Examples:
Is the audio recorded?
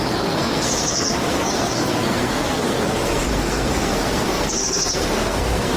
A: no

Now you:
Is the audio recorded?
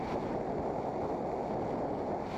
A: yes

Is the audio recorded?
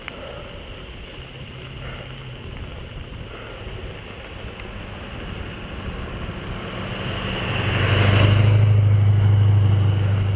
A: yes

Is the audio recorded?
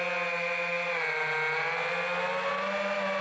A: yes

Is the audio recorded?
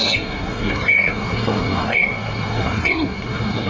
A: no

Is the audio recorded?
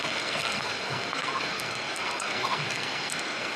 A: no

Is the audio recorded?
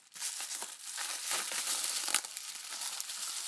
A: yes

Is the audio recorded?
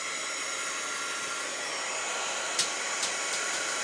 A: yes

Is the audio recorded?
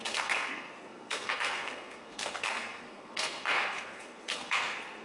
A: no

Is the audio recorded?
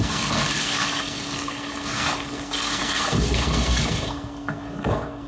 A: no